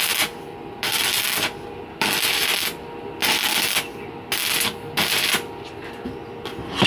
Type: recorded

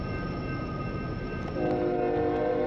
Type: recorded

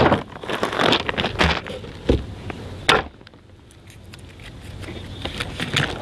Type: recorded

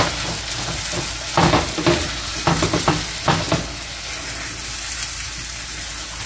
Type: recorded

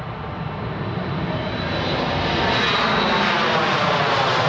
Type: recorded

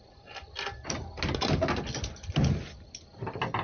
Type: recorded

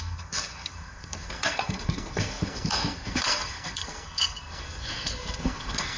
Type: remade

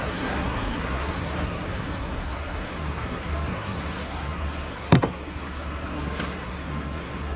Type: remade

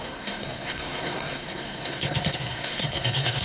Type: remade